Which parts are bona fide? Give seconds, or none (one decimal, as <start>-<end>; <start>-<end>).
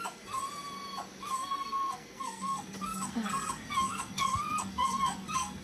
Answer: 0.4-1.2